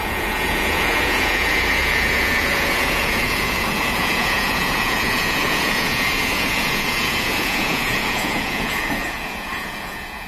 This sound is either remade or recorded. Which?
remade